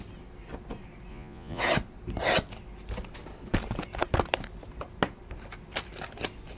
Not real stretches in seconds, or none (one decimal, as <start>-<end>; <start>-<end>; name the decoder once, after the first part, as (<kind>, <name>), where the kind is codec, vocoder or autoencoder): 1.1-1.6 (vocoder, Vocos)